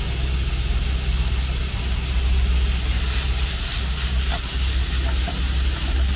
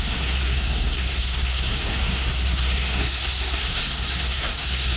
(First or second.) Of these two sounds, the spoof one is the second